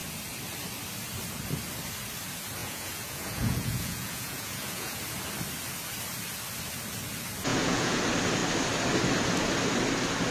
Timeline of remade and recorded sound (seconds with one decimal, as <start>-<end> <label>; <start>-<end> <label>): 0.0-2.6 recorded; 2.6-5.0 remade; 5.0-7.5 recorded; 7.5-8.0 remade; 8.0-10.3 recorded